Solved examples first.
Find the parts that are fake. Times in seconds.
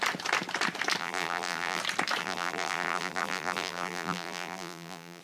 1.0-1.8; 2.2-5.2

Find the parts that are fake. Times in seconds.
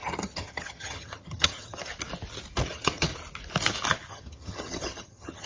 0.0-1.9; 2.7-3.1; 4.1-5.5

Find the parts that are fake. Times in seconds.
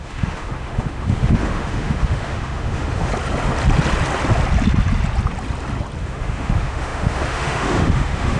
0.0-3.1; 6.0-8.4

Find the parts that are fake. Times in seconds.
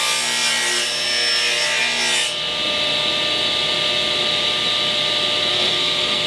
5.5-6.3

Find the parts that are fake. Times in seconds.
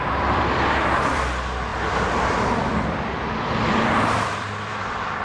0.0-5.2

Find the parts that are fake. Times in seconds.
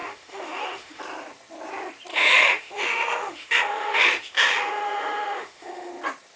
0.0-1.0; 2.1-5.9